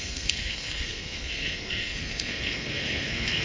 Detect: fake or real fake